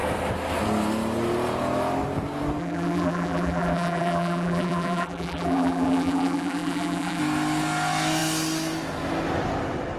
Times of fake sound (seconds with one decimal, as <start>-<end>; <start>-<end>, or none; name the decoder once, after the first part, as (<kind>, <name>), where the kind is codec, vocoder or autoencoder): 2.6-7.2 (vocoder, BigVGAN v2)

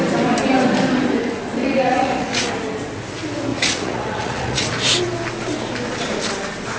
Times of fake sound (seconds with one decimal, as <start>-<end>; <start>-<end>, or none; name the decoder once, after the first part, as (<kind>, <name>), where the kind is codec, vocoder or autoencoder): 1.6-2.5 (vocoder, Vocos); 3.5-4.6